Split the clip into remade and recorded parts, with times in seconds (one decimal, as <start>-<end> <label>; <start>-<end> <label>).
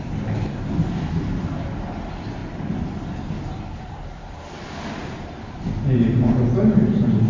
0.0-7.3 recorded